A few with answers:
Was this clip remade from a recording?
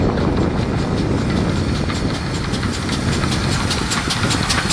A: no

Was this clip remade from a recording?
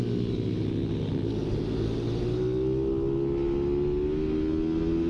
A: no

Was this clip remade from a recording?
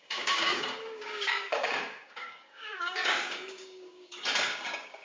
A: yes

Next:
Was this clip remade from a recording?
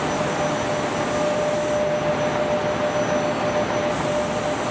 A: no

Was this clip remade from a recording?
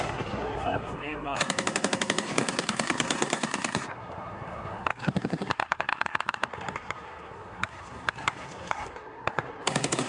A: yes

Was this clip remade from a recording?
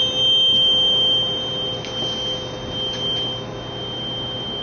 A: no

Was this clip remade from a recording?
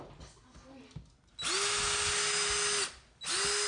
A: no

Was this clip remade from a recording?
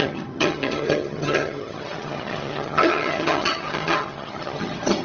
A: yes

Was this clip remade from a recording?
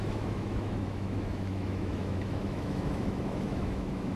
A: yes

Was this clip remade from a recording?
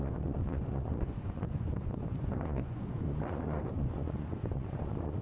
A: yes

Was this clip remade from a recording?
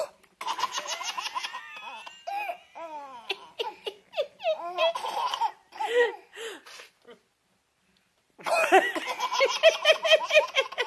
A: no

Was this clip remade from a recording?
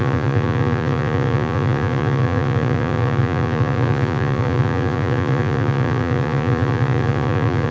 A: yes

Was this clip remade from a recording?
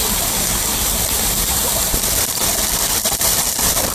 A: yes